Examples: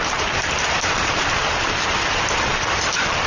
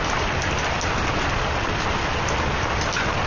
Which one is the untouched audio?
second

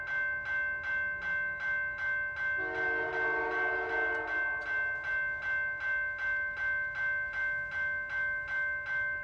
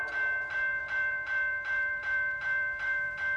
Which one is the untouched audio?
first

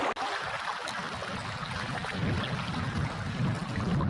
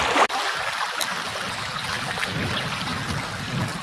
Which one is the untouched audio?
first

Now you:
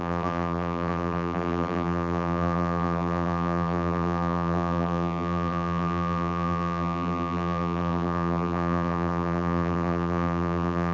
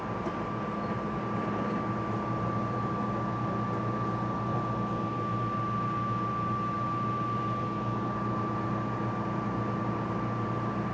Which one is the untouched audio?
second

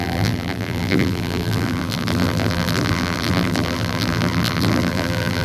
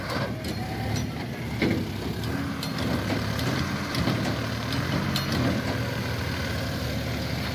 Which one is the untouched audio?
second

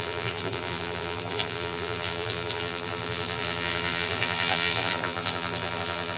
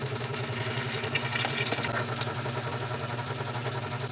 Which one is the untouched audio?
second